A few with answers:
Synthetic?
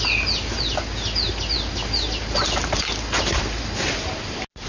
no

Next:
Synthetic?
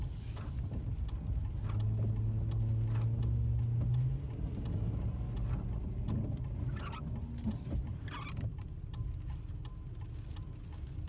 no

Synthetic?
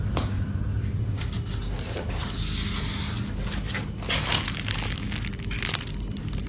no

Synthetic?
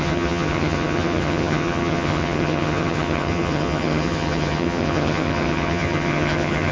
yes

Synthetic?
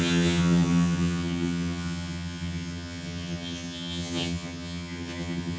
yes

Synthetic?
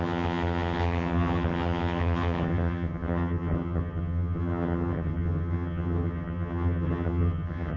yes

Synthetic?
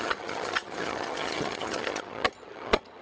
yes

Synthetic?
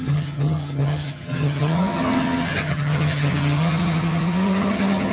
yes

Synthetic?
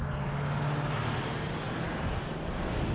no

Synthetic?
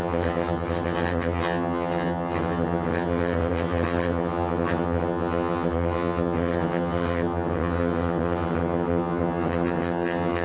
yes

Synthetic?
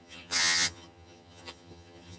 yes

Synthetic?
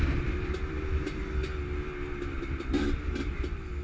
no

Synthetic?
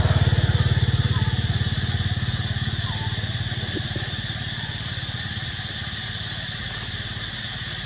no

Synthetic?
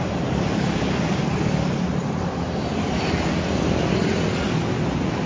no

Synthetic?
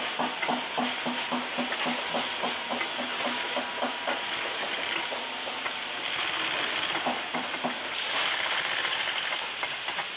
no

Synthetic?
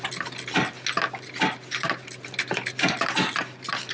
no